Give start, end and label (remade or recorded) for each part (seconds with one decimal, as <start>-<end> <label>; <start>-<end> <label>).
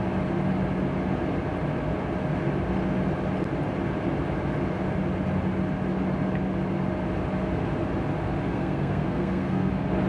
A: 0.0-8.5 recorded; 8.5-9.7 remade; 9.7-10.1 recorded